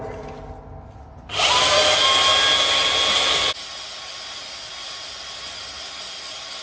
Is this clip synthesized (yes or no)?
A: no